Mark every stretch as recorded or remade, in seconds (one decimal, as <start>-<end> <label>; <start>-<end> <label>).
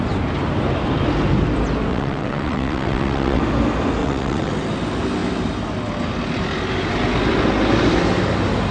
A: 0.0-1.9 recorded; 1.9-3.4 remade; 3.4-4.0 recorded; 4.0-4.5 remade; 4.5-8.7 recorded